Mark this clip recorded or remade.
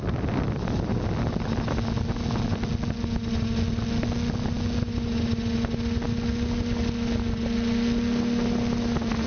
recorded